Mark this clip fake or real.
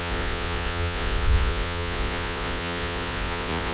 fake